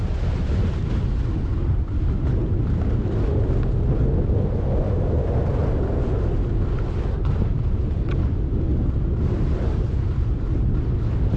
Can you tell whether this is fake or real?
real